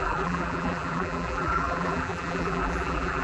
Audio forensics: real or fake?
fake